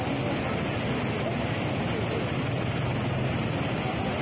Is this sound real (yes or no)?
yes